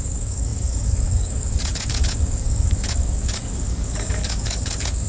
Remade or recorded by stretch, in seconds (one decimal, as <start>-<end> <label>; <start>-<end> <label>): 0.0-5.1 remade